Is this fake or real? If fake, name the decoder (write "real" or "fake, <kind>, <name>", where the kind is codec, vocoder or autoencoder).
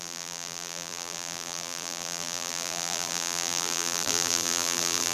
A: fake, vocoder, BigVGAN v2